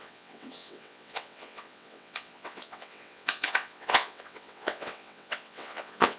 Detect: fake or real fake